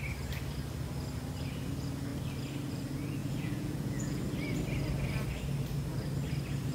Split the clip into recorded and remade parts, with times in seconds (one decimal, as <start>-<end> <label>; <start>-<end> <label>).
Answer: 0.0-3.2 recorded; 3.2-4.2 remade; 4.2-6.7 recorded